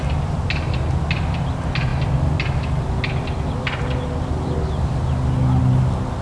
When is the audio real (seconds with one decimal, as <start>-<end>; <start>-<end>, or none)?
0.0-6.2